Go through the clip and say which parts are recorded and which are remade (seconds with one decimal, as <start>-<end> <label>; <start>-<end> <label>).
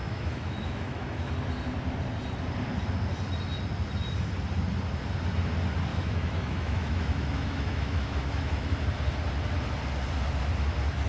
0.0-1.3 remade; 1.3-5.9 recorded; 5.9-8.8 remade; 8.8-11.1 recorded